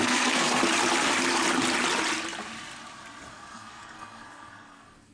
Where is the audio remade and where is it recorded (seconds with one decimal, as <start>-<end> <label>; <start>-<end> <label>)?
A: 0.0-0.6 remade; 0.6-3.3 recorded; 3.3-5.1 remade